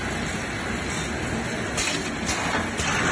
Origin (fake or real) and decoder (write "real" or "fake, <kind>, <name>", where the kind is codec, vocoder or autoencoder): real